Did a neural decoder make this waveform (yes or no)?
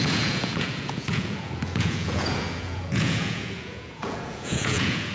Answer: yes